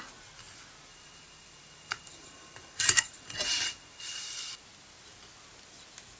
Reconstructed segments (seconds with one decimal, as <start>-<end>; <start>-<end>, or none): 0.9-4.6